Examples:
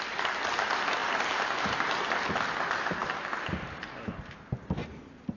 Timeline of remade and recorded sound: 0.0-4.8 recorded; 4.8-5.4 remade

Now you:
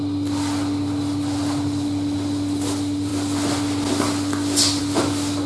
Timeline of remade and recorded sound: 0.0-5.5 recorded

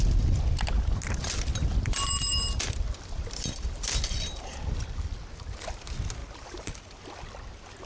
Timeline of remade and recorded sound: 0.0-1.7 recorded; 1.7-5.1 remade; 5.1-6.2 recorded; 6.2-7.0 remade; 7.0-7.9 recorded

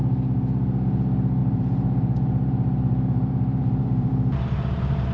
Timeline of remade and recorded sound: 0.0-1.4 recorded; 1.4-4.1 remade; 4.1-5.1 recorded

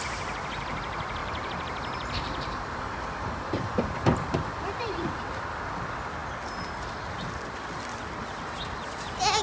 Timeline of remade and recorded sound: 0.0-1.2 recorded; 1.2-5.4 remade; 5.4-9.4 recorded